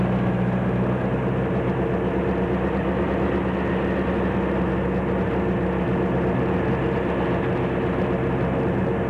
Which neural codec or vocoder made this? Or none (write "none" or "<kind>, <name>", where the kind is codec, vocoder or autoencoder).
none